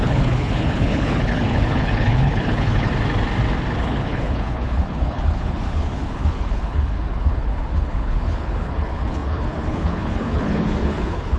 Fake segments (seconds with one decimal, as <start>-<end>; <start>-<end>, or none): 0.0-2.9; 3.8-11.4